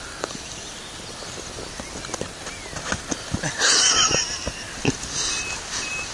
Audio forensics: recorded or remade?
recorded